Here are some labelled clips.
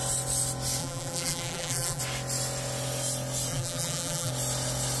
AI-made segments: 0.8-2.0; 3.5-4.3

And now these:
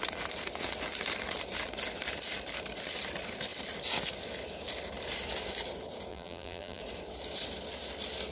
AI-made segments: 6.1-6.8

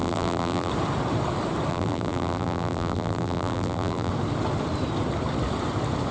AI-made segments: 0.0-0.7; 1.7-4.1

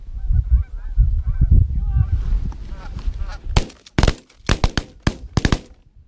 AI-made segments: 2.6-3.2

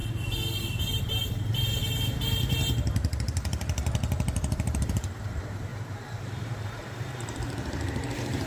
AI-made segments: 1.0-1.8; 3.2-8.5

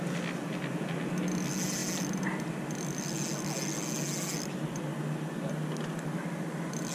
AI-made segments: none

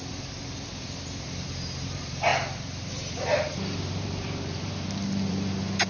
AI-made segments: 0.0-2.3; 2.9-5.9

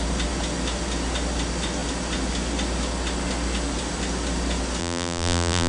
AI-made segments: 4.8-5.7